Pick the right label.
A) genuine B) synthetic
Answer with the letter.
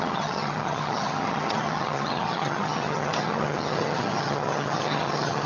B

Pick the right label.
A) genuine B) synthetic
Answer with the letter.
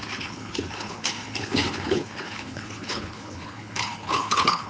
B